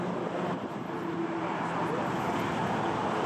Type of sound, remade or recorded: recorded